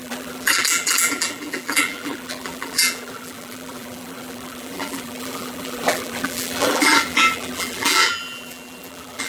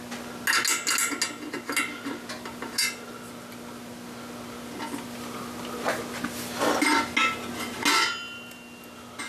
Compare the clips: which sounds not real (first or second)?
first